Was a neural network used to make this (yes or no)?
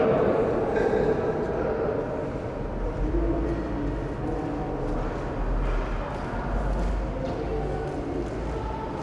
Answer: no